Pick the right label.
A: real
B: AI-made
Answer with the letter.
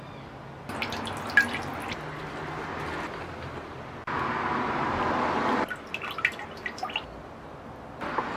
A